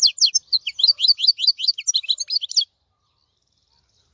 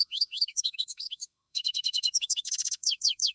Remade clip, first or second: second